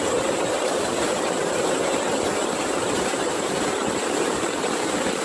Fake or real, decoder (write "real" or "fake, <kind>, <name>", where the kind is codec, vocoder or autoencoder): fake, vocoder, BigVGAN v2